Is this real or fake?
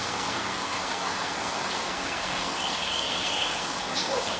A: fake